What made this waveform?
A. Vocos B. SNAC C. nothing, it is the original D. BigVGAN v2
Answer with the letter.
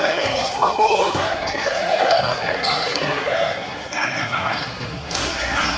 B